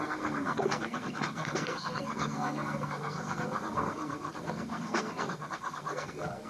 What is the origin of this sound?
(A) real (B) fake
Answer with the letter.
B